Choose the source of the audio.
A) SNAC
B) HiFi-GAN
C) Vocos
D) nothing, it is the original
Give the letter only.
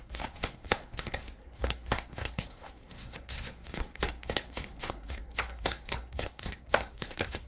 A